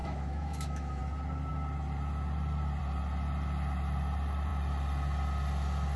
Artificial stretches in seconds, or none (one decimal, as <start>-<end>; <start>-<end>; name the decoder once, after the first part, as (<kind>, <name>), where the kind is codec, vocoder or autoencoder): 0.0-1.0 (autoencoder, DAC-VAE)